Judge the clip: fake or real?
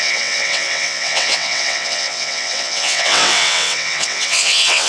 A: fake